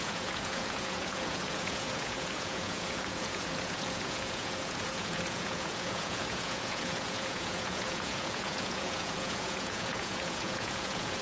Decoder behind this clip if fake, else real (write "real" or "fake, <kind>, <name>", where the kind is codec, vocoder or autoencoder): fake, vocoder, Vocos